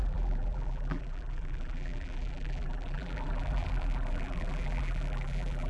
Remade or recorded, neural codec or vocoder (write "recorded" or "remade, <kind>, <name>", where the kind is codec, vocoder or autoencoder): remade, vocoder, BigVGAN v2